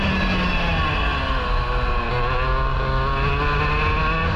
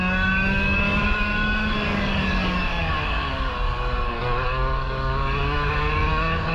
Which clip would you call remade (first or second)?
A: second